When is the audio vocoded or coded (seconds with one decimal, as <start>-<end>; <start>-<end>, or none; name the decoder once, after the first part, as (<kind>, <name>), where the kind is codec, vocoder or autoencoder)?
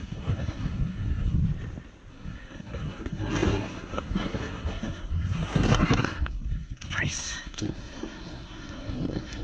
0.0-1.4 (codec, SNAC); 2.1-9.4